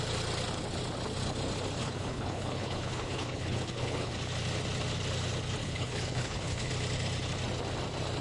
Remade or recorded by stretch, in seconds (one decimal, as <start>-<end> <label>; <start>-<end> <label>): 0.0-1.8 recorded; 1.8-4.1 remade; 4.1-5.6 recorded; 5.6-6.7 remade; 6.7-8.2 recorded